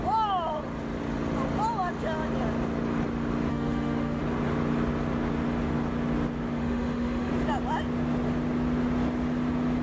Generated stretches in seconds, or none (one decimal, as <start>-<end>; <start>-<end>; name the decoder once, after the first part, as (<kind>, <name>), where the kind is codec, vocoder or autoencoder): 3.5-4.2 (autoencoder, DAC-VAE); 6.6-7.3

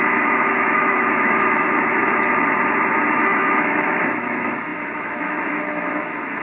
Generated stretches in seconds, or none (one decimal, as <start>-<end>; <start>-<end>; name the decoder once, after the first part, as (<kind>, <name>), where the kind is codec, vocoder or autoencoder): 0.0-2.0 (autoencoder, DAC-VAE); 3.1-6.4

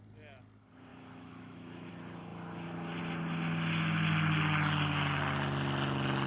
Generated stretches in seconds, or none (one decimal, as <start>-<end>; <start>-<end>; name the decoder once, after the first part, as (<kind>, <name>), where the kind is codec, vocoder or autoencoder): 0.9-1.9 (autoencoder, DAC-VAE)

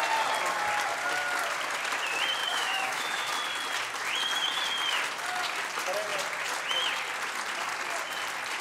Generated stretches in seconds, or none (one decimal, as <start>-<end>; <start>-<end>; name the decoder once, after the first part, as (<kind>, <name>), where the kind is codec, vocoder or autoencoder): 2.4-3.3 (autoencoder, DAC-VAE)

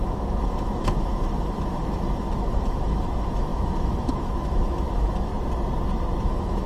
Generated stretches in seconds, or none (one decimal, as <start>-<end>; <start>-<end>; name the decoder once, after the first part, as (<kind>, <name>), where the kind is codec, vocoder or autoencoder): 0.0-5.3 (autoencoder, DAC-VAE); 6.2-6.7